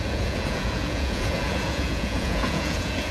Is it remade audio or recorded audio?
remade